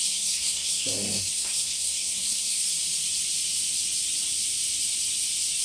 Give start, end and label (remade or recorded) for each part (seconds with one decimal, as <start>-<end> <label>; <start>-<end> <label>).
0.0-2.7 remade; 2.7-5.6 recorded